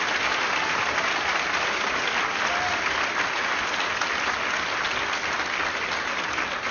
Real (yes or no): yes